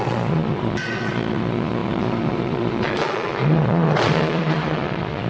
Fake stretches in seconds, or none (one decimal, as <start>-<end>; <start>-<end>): 0.0-5.3

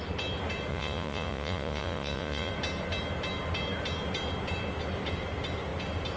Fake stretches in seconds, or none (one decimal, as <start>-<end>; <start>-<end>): 0.7-2.5

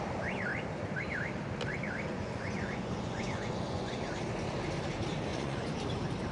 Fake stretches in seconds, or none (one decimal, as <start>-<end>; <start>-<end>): 2.1-4.1; 5.3-5.8